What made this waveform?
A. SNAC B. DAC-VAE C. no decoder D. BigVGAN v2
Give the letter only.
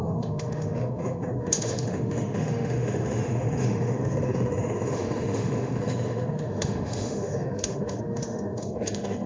B